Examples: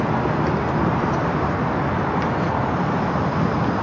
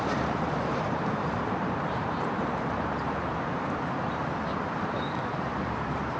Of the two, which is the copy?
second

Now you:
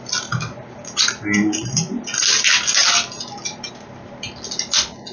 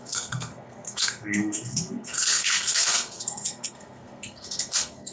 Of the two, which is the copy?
second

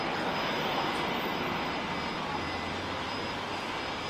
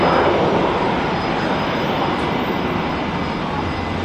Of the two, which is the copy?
second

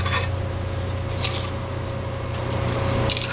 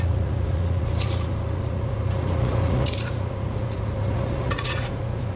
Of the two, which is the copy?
second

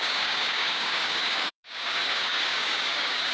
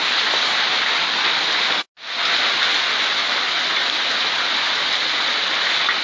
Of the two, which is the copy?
first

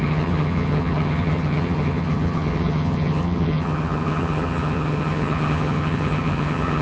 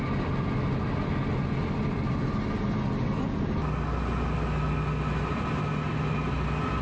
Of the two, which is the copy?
first